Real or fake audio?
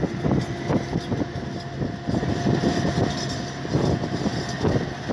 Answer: real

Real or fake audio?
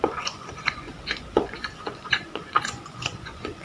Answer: fake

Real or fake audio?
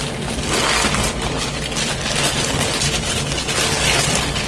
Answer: real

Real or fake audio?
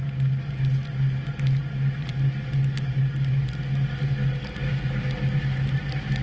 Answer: real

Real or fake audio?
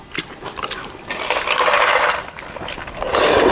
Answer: real